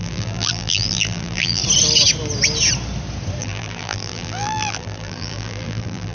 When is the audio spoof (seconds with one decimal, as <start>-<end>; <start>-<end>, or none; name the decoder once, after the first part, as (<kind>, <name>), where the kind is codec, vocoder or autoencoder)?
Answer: 0.0-1.6 (vocoder, BigVGAN v2); 3.4-6.1